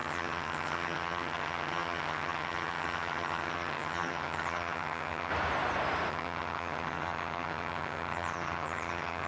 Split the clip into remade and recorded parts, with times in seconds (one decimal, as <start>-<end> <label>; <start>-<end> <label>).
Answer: 0.0-5.3 remade; 5.3-6.1 recorded; 6.1-9.3 remade